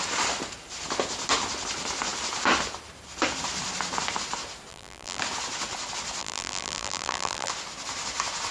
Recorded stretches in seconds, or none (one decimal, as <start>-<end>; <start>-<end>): 0.0-4.7; 5.2-6.2; 7.5-8.5